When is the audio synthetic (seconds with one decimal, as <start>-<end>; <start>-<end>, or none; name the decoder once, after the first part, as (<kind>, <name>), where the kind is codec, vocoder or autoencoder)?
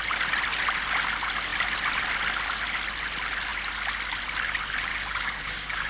4.9-5.9 (codec, DAC)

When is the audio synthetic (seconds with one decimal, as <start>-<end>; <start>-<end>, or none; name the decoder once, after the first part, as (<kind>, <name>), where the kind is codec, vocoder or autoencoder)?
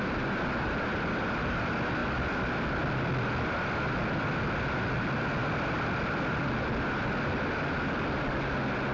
none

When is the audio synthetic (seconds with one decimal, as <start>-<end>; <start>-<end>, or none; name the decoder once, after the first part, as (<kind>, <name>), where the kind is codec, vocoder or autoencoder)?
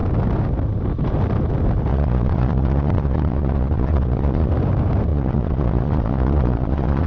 1.9-4.5 (vocoder, Vocos); 5.1-7.1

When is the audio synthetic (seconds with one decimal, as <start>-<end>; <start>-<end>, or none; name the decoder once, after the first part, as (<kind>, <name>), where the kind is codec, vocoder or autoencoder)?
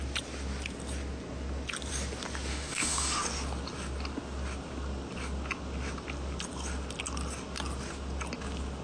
2.5-3.2 (autoencoder, DAC-VAE)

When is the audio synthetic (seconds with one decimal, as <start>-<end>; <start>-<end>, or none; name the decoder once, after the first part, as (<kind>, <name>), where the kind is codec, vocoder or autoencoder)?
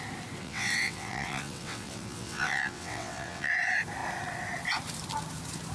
0.4-3.5 (vocoder, WaveNeXt)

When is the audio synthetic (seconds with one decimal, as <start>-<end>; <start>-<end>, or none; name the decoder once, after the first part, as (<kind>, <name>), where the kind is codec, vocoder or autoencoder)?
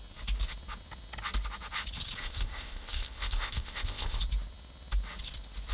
2.2-4.2 (codec, ZipCodec)